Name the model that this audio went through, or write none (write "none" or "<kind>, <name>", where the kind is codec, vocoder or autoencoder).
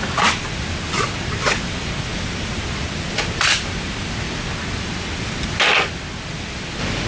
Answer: none